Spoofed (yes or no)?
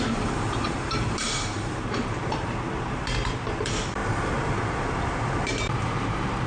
yes